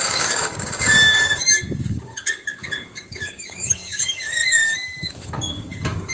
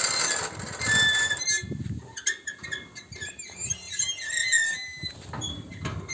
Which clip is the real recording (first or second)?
second